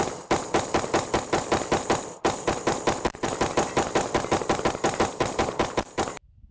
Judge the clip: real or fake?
real